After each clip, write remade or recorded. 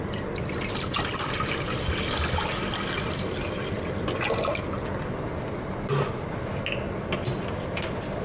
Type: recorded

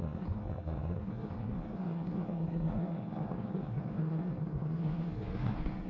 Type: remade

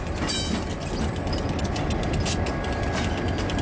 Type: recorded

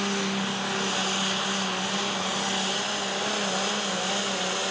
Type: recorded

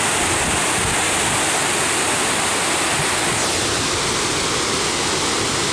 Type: recorded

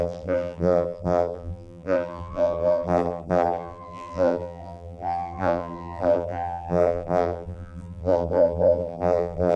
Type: remade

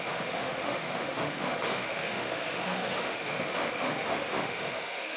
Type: remade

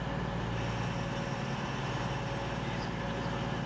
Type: recorded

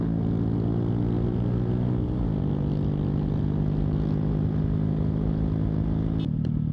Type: recorded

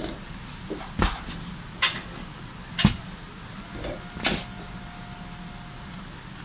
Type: recorded